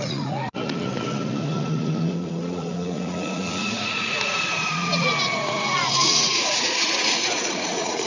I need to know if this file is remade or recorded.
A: remade